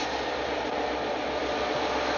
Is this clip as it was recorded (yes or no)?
no